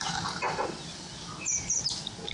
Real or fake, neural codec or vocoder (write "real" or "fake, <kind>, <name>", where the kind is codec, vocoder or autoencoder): real